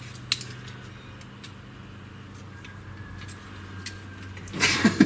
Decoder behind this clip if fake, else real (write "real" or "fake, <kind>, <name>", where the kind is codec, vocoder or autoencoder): real